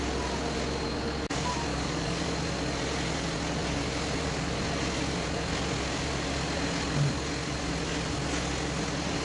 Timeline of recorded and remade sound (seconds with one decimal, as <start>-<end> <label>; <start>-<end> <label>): 0.0-1.7 recorded; 1.7-2.2 remade; 2.2-9.2 recorded